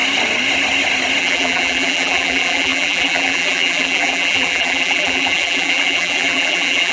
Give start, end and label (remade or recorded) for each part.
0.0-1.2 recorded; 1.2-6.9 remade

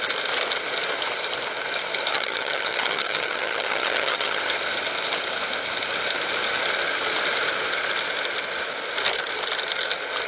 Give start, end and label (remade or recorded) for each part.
0.0-2.1 recorded; 2.1-4.4 remade; 4.4-10.3 recorded

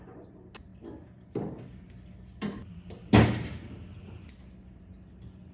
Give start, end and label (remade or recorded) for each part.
0.0-5.5 recorded

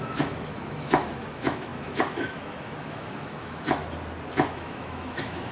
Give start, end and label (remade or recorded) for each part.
0.0-3.8 remade; 3.8-4.5 recorded; 4.5-5.5 remade

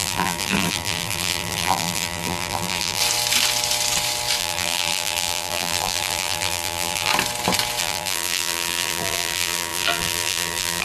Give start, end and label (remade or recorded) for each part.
0.0-3.0 remade; 3.0-4.4 recorded; 4.4-7.1 remade; 7.1-7.8 recorded; 7.8-10.8 remade

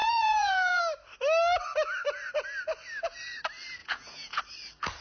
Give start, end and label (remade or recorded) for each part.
0.0-0.8 remade; 0.8-3.8 recorded; 3.8-4.4 remade; 4.4-5.0 recorded

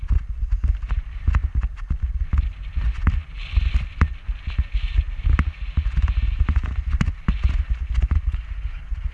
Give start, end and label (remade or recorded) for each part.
0.0-9.1 recorded

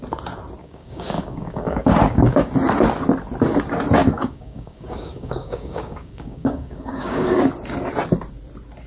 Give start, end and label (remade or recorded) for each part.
0.0-0.6 recorded; 0.6-2.5 remade; 2.5-4.0 recorded; 4.0-7.4 remade; 7.4-8.9 recorded